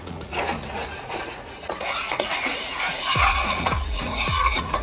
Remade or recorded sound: remade